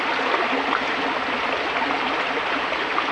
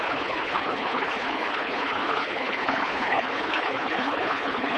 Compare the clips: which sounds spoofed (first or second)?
second